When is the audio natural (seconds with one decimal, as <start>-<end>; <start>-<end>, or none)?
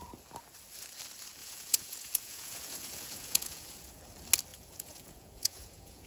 0.0-1.4; 4.0-4.5